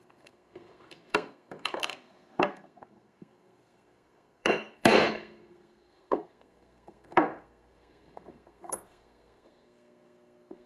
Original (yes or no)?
no